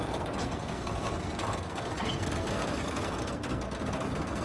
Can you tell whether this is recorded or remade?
remade